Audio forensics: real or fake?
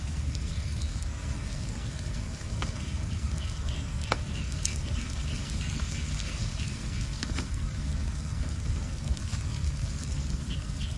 fake